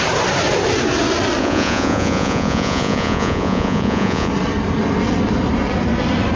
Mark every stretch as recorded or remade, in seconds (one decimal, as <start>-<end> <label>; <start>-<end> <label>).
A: 0.0-1.4 recorded; 1.4-4.3 remade; 4.3-6.4 recorded